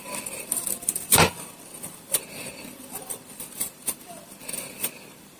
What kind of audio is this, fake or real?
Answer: fake